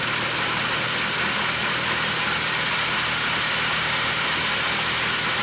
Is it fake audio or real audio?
real